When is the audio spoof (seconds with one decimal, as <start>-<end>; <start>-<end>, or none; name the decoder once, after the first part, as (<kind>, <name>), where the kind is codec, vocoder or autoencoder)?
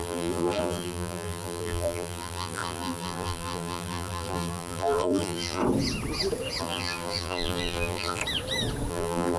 0.0-5.6 (vocoder, BigVGAN v2); 6.6-8.2; 8.9-9.4